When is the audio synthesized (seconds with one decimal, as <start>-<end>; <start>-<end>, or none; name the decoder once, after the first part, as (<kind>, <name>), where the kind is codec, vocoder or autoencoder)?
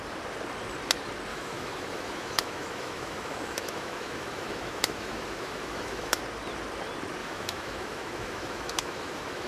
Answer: 1.3-6.2 (autoencoder, DAC-VAE); 7.2-9.5